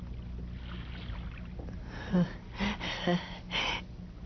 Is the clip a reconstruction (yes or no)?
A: no